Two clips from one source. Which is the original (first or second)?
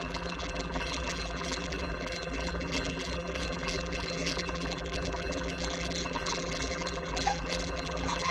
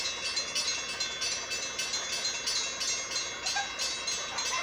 second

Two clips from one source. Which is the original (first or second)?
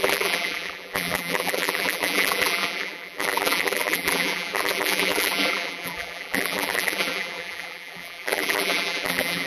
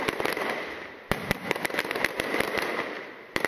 second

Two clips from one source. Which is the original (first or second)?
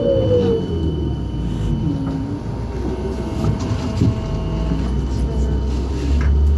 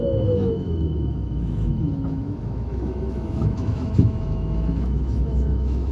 first